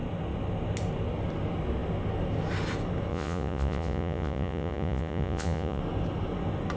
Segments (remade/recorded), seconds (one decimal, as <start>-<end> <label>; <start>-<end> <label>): 0.0-3.1 recorded; 3.1-5.8 remade; 5.8-6.8 recorded